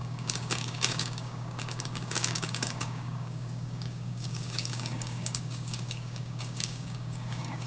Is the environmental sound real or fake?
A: fake